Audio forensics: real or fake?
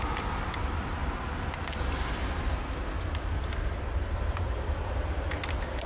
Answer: real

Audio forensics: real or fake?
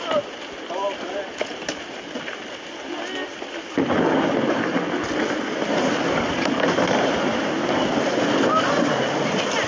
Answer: real